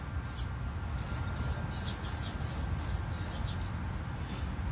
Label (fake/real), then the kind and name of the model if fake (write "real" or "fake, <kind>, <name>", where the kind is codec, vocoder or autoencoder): real